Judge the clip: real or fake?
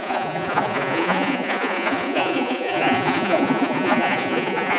fake